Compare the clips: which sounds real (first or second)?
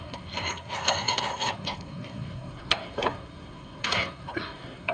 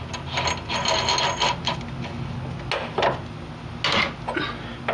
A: second